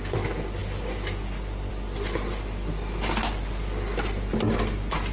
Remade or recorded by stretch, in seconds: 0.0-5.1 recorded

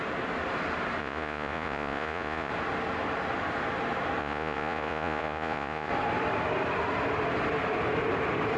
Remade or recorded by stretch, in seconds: 0.0-1.0 recorded; 1.0-2.5 remade; 2.5-4.2 recorded; 4.2-5.9 remade; 5.9-8.6 recorded

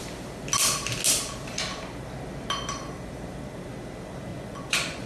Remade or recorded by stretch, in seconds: 0.0-4.3 recorded; 4.3-5.1 remade

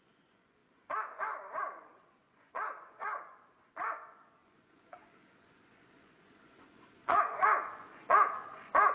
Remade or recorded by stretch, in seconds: 0.0-8.9 remade

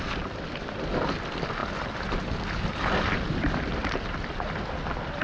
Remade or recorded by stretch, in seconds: 0.0-5.2 recorded

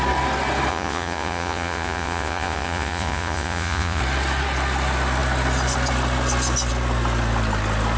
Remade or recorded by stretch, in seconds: 0.0-0.7 recorded; 0.7-4.0 remade; 4.0-8.0 recorded

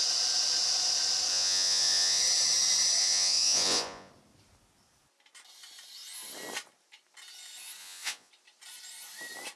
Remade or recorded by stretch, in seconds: 0.0-1.3 recorded; 1.3-2.2 remade; 2.2-3.0 recorded; 3.0-4.1 remade; 4.1-7.8 recorded; 7.8-8.3 remade; 8.3-9.6 recorded

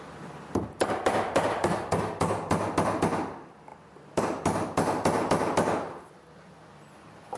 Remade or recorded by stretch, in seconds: 0.0-7.4 recorded